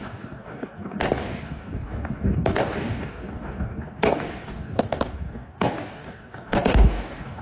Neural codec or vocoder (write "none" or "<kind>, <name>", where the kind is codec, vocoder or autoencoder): codec, DAC